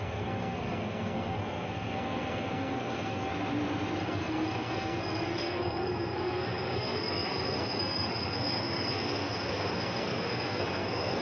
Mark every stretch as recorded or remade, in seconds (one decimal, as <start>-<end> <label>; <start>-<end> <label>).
0.0-3.3 remade; 3.3-4.0 recorded; 4.0-11.2 remade